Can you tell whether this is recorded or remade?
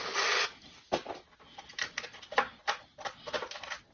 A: recorded